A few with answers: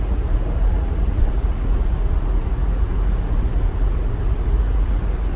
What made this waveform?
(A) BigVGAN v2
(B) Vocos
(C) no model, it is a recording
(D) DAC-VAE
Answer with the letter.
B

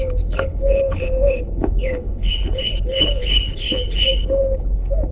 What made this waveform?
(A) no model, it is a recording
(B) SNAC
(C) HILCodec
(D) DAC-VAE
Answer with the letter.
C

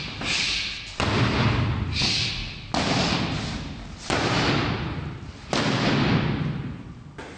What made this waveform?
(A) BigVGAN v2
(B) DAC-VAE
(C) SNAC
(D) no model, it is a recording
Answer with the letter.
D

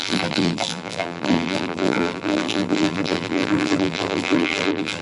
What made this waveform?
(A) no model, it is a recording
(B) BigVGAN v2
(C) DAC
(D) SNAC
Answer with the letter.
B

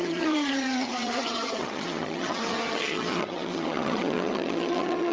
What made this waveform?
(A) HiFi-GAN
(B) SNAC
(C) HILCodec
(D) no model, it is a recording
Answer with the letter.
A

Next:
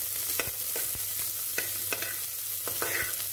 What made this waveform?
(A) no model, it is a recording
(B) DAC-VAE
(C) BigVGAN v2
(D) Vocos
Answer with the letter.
A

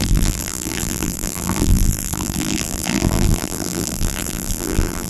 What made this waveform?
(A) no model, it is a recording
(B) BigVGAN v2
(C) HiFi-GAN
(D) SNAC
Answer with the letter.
B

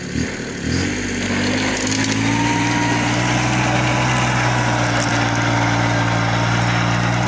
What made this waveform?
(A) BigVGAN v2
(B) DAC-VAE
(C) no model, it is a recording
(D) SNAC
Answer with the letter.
C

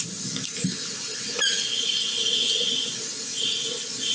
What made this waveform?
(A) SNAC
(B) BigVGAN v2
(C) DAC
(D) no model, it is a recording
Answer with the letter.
D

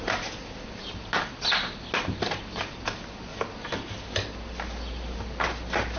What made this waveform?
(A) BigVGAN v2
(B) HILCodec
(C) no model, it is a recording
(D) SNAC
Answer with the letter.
C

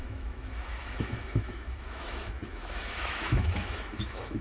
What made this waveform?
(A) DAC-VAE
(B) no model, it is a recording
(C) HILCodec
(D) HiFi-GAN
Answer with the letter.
A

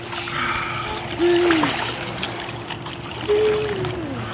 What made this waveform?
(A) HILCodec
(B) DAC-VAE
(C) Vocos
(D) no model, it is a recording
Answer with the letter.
D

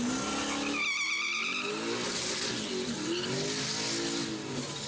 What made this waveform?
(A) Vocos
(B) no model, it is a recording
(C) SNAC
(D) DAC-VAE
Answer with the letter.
B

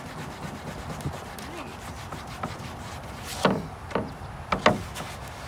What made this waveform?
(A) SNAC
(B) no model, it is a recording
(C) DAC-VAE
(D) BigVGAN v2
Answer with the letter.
B